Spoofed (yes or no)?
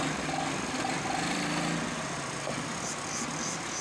no